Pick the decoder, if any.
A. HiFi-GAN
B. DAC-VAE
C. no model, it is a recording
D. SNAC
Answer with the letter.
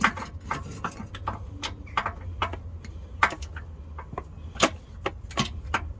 C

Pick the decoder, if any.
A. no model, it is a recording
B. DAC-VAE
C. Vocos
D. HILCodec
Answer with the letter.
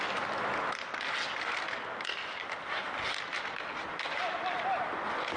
A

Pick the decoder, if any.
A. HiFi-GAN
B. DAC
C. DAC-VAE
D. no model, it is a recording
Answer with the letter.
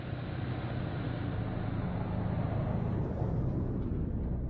D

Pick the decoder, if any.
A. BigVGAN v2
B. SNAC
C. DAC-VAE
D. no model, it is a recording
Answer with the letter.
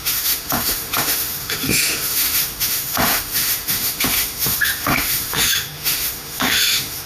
C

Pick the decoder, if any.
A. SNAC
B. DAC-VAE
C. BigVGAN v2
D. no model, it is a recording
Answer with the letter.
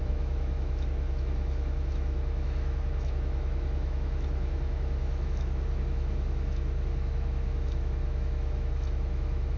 B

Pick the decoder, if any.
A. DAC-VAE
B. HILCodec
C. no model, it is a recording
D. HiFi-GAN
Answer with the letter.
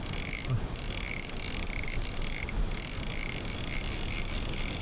C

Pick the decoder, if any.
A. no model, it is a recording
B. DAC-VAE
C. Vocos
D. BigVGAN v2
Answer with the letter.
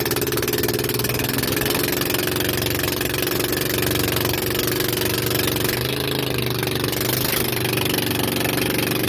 A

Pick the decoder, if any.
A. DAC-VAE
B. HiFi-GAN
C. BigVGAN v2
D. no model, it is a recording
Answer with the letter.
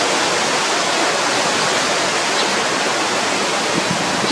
D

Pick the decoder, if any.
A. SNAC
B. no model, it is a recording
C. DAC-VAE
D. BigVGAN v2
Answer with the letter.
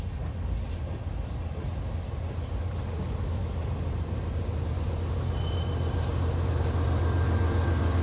B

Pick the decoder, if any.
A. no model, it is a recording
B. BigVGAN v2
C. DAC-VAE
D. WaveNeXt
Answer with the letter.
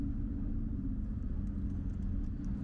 A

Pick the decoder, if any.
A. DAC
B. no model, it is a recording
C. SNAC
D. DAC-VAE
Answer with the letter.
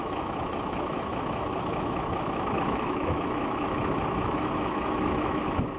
D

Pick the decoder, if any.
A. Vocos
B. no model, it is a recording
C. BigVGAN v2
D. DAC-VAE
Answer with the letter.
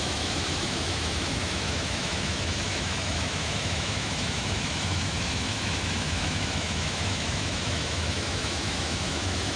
D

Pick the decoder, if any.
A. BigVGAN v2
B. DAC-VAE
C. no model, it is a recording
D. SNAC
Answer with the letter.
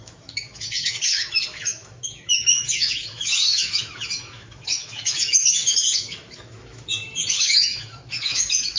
B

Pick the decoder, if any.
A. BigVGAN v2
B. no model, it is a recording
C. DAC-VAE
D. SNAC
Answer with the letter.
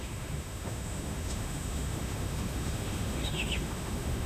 C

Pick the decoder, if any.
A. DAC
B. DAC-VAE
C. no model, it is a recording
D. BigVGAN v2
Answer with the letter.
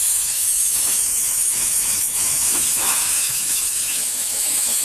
B